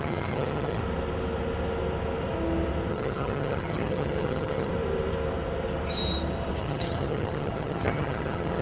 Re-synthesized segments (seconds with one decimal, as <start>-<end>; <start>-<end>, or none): 0.0-0.8; 2.9-4.7; 6.6-8.6